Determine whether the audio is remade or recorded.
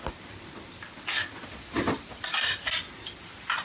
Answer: recorded